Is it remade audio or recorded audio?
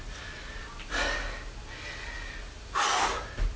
recorded